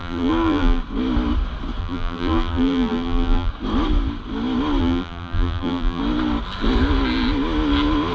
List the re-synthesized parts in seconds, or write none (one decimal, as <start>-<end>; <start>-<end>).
0.0-0.8; 1.8-3.5; 4.8-6.0